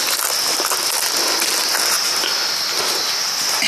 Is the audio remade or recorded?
recorded